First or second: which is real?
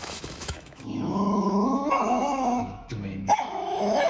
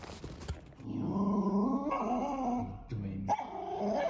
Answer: second